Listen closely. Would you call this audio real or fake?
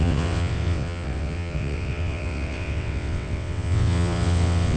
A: fake